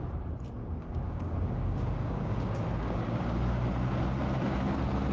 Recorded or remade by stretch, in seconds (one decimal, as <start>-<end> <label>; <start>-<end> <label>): 0.0-0.6 recorded; 0.6-3.7 remade; 3.7-5.1 recorded